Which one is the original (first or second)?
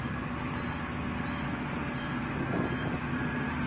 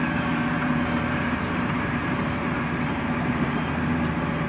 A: first